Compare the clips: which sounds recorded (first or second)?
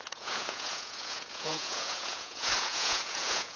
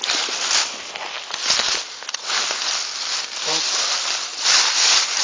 second